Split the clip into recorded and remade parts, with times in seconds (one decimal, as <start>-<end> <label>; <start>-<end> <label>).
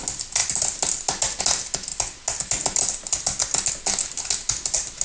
0.0-5.0 recorded